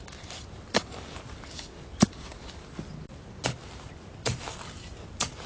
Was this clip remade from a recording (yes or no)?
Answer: no